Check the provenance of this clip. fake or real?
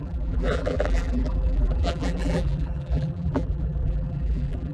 fake